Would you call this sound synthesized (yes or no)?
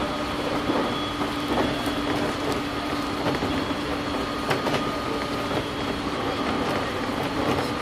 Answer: no